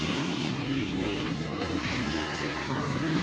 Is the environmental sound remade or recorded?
remade